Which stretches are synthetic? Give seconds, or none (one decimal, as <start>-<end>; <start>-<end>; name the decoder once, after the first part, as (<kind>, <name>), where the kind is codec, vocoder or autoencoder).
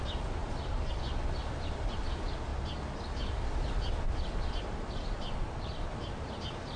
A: none